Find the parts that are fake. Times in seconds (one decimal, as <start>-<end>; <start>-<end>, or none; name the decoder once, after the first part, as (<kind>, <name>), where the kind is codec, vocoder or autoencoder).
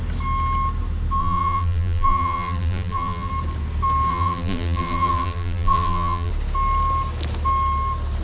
1.2-3.3 (vocoder, BigVGAN v2); 4.1-6.3